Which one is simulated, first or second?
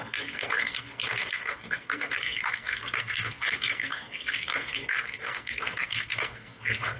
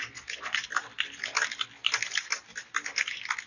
first